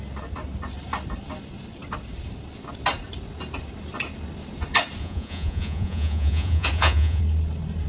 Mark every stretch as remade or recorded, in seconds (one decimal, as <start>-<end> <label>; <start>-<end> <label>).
0.0-5.0 recorded; 5.0-7.2 remade; 7.2-7.9 recorded